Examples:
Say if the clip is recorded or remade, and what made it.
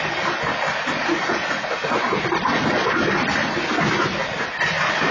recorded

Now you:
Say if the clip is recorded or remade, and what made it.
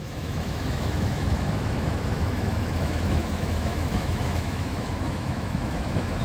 remade, autoencoder, DAC-VAE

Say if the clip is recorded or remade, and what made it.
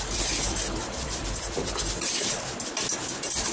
recorded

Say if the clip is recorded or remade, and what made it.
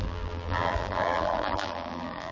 remade, vocoder, BigVGAN v2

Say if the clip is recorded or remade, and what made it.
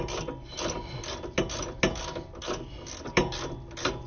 recorded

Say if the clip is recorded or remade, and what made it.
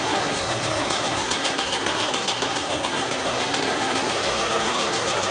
remade, codec, SNAC